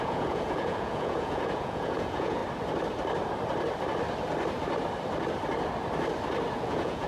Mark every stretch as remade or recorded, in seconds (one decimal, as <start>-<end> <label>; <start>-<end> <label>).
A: 0.0-2.4 remade; 2.4-6.5 recorded; 6.5-7.1 remade